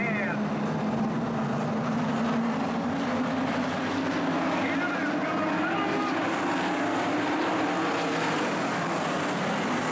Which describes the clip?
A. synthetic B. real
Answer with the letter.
B